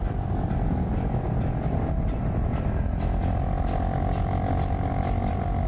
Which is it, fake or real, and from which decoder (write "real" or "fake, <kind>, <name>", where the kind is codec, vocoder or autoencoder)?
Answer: real